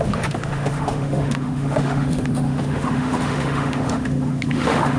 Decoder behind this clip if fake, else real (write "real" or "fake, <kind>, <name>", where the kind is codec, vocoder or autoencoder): fake, autoencoder, DAC-VAE